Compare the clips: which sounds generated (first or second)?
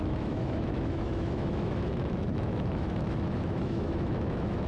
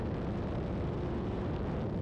first